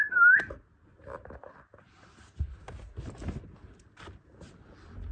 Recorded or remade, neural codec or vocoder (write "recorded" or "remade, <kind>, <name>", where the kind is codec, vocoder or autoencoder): recorded